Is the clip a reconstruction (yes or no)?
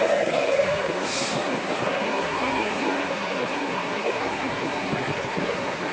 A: yes